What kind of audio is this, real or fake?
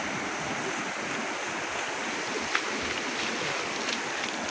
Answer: real